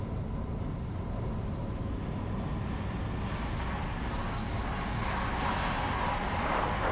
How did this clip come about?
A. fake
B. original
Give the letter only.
B